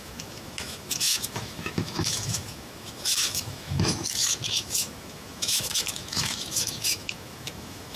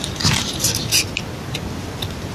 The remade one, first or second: first